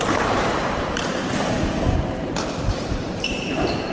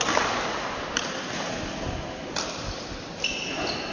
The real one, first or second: second